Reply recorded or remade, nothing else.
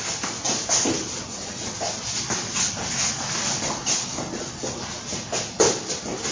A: recorded